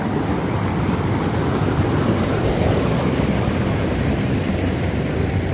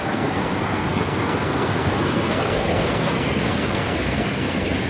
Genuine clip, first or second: first